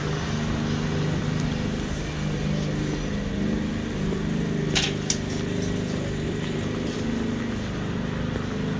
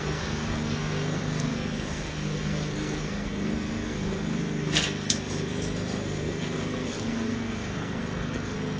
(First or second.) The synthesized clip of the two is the second